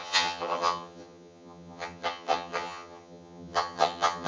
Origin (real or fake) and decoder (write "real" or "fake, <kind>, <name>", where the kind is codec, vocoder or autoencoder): fake, vocoder, HiFi-GAN